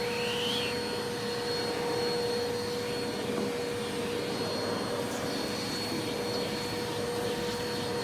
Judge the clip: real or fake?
real